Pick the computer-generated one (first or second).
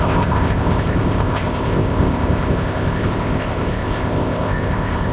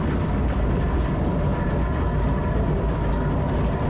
first